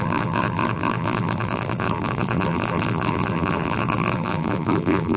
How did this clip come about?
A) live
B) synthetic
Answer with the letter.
B